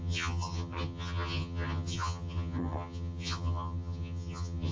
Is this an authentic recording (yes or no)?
no